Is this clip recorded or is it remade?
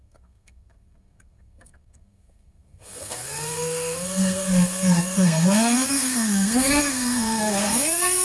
remade